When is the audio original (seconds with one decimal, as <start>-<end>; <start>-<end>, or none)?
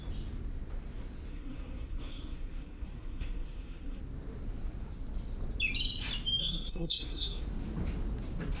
0.0-1.3; 4.0-6.4; 7.4-8.6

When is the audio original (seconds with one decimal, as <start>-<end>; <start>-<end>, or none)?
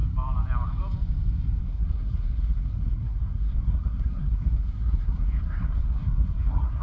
0.0-1.6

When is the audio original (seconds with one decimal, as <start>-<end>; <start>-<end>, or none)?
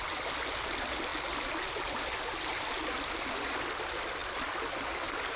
0.0-5.4